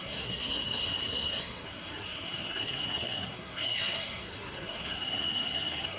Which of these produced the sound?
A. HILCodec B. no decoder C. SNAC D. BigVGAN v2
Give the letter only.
C